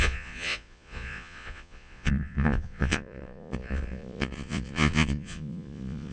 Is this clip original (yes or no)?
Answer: no